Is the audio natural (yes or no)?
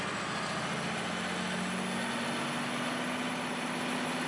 yes